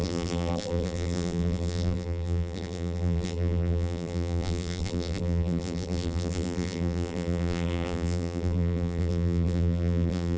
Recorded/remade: remade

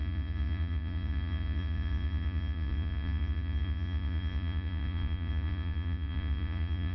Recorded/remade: remade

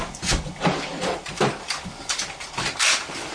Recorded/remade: remade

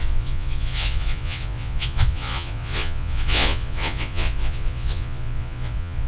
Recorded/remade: remade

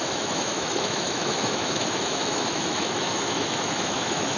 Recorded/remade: remade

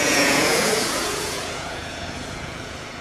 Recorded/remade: remade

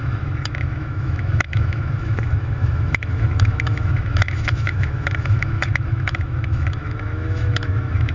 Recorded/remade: remade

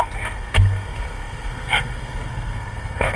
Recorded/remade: remade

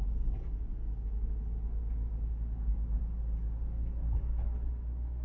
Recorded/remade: recorded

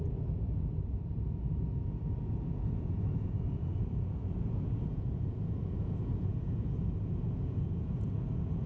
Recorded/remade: remade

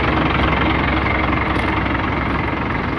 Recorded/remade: recorded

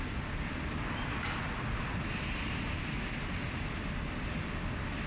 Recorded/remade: recorded